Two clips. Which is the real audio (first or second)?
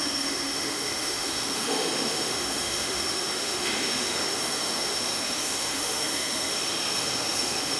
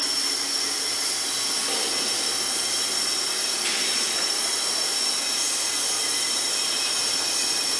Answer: second